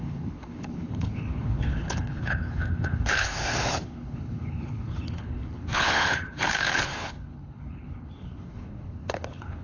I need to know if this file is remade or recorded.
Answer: remade